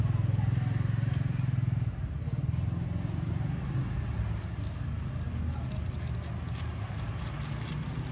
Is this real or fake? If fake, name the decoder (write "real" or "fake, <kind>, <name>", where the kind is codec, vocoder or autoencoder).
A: real